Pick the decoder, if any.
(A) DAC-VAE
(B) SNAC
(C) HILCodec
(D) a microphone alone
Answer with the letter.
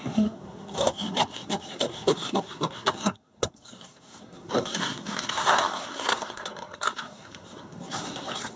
B